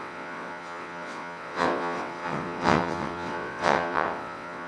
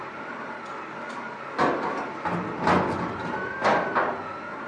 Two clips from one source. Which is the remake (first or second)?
first